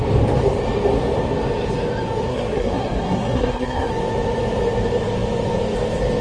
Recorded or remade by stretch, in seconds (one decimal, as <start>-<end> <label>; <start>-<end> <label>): 0.0-2.3 recorded; 2.3-3.9 remade; 3.9-6.2 recorded